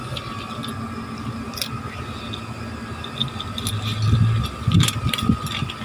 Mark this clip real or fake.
real